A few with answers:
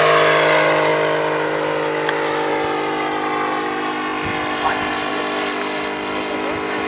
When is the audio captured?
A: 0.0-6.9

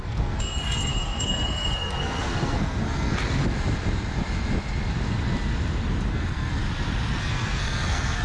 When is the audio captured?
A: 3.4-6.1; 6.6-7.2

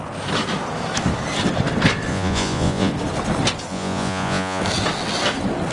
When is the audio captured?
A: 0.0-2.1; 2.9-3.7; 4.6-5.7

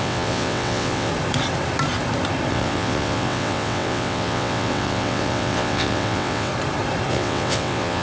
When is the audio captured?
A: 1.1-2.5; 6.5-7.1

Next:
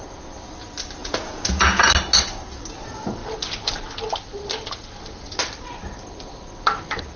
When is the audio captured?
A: 0.0-1.0; 1.9-7.2

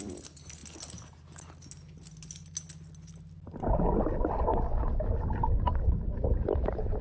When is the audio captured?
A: 0.0-7.0

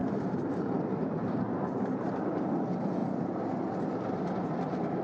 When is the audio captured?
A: 2.5-3.0; 3.6-5.0